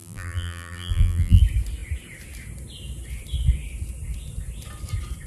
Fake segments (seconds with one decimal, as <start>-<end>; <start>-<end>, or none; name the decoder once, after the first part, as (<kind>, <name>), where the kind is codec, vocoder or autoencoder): 0.0-1.4 (vocoder, BigVGAN v2)